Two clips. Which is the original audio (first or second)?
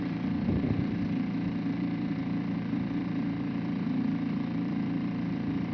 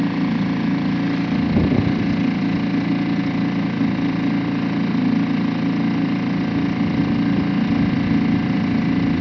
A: second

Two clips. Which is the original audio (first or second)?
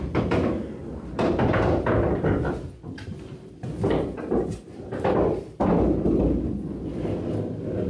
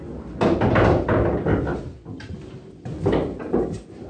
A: second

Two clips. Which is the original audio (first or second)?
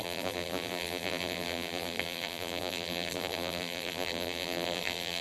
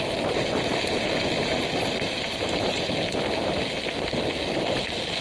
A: second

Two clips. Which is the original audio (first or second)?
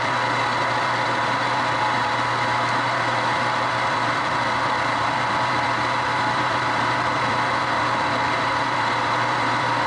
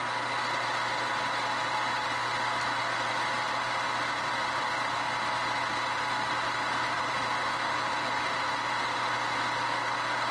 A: second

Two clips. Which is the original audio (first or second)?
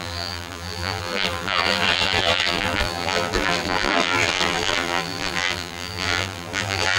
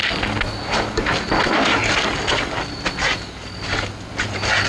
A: second